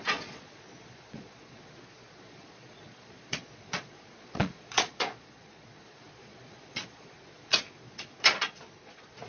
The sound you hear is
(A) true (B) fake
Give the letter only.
B